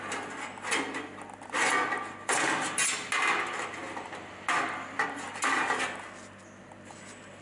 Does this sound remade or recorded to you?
recorded